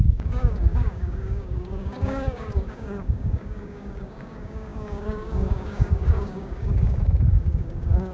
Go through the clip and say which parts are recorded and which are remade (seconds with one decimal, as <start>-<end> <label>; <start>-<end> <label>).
0.0-8.1 remade